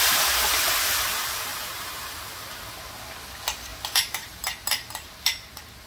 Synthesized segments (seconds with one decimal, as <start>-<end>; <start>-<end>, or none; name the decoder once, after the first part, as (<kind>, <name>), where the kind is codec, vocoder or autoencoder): 1.5-2.1 (vocoder, BigVGAN v2); 3.7-5.5

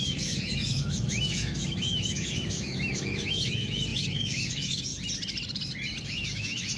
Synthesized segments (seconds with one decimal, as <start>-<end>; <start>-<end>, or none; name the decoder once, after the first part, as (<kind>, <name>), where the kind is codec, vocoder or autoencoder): 0.0-4.9 (autoencoder, DAC-VAE); 6.0-6.8

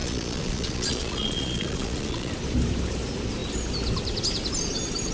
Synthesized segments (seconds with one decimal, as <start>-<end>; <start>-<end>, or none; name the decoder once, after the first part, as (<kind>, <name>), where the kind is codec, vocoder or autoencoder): 0.0-2.3 (vocoder, Vocos)

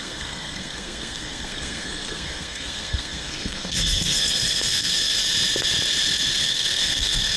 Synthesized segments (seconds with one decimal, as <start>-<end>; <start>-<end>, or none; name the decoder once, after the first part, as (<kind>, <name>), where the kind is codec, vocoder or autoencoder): 0.0-5.2 (codec, SNAC); 6.4-7.4

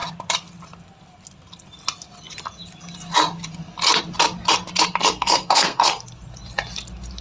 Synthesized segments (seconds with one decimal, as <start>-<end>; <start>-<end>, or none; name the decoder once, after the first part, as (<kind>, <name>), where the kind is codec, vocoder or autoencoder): 5.0-5.9 (codec, SNAC)